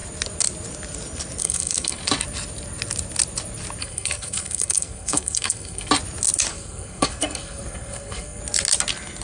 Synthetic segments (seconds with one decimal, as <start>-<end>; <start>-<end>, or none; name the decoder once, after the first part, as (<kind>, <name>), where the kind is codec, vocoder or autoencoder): 1.4-2.0 (codec, SNAC); 3.8-5.9; 6.5-8.4